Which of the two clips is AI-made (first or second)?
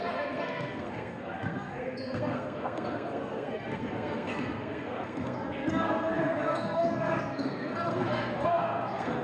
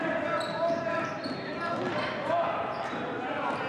first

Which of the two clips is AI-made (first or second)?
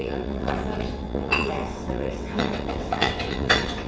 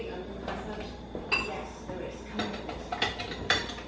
first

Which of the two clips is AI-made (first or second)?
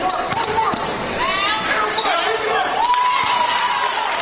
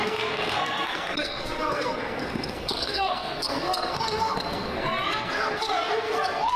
second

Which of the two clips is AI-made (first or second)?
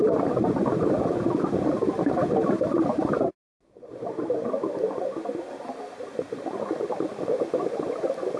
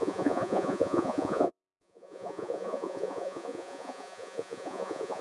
second